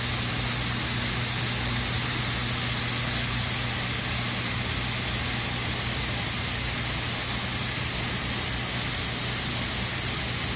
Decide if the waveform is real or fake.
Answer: real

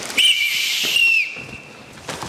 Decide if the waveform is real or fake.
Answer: real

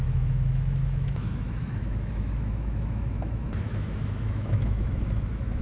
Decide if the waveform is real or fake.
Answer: fake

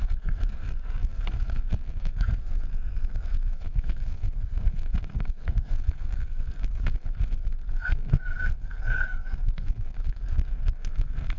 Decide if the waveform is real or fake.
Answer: fake